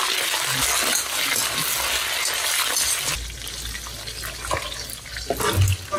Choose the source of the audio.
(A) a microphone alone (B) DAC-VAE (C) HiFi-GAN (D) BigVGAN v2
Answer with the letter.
A